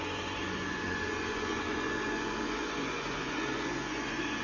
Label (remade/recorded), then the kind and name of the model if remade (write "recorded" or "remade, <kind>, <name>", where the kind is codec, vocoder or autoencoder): remade, vocoder, Vocos